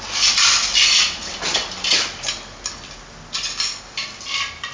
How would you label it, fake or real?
real